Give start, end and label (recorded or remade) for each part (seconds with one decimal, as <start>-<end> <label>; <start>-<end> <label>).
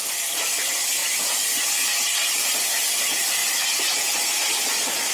0.0-5.1 recorded